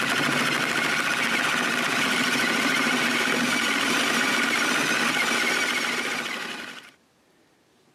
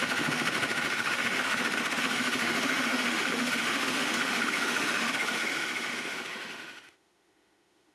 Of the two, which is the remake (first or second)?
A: second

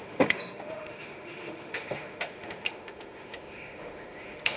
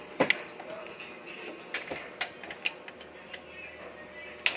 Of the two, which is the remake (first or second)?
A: first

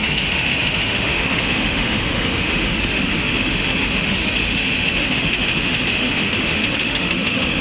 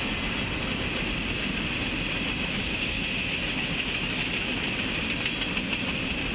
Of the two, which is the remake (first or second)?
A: first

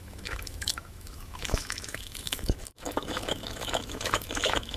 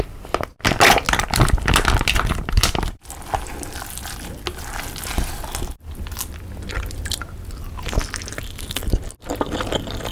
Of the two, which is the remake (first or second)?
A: first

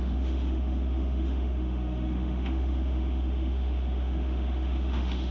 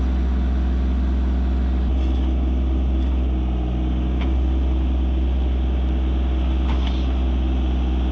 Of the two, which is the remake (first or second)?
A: first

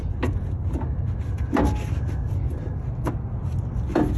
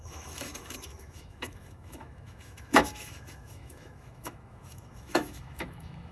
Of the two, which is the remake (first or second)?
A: second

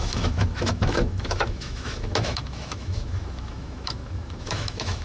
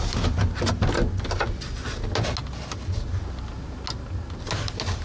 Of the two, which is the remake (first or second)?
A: first